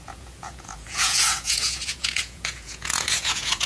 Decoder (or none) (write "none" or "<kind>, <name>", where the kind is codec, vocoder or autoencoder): vocoder, Vocos